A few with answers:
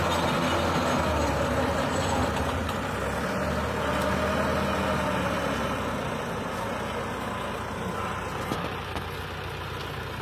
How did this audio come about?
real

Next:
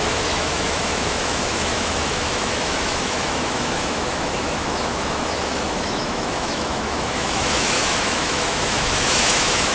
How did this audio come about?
fake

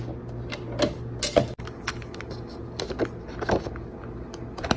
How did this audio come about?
real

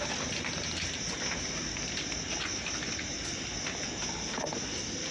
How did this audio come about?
real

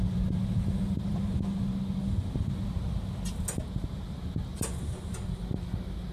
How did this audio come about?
real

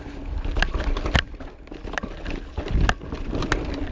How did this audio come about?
real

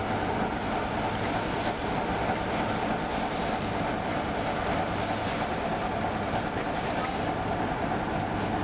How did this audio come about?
real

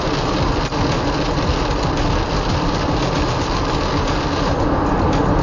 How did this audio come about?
real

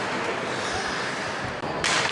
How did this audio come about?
real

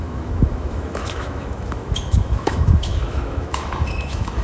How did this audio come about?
fake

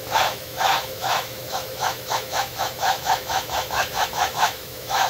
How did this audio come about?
fake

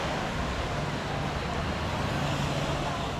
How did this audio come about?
real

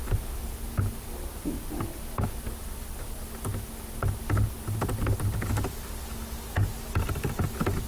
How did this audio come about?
real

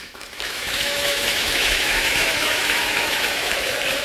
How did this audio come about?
fake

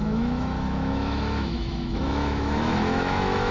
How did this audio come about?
fake